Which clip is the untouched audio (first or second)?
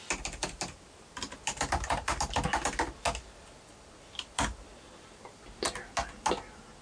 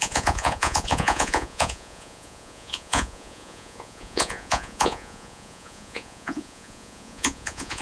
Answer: first